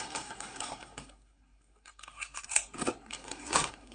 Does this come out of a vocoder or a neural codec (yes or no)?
yes